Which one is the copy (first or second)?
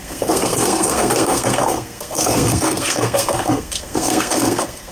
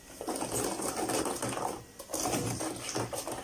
first